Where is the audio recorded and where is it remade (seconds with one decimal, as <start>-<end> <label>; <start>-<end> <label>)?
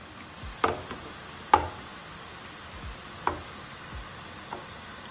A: 0.0-5.1 recorded